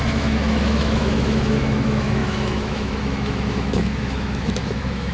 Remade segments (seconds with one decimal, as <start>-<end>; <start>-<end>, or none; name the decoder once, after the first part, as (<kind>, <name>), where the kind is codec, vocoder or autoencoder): 0.0-5.1 (autoencoder, DAC-VAE)